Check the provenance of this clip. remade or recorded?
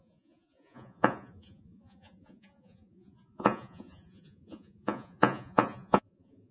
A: remade